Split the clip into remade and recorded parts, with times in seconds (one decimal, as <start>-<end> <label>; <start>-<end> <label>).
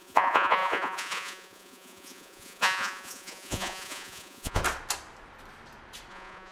0.0-4.6 remade; 4.6-6.1 recorded; 6.1-6.5 remade